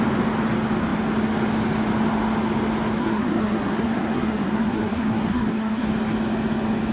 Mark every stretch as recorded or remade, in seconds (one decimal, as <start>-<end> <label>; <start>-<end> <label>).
0.0-3.0 recorded; 3.0-5.9 remade; 5.9-6.9 recorded